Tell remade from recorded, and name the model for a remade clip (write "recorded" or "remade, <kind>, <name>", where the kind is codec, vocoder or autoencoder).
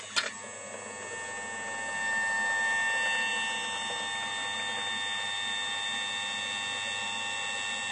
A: recorded